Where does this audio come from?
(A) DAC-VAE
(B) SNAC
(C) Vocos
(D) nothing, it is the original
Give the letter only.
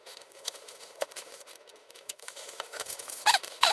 A